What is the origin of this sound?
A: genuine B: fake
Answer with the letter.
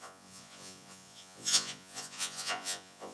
B